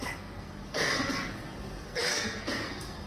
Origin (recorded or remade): remade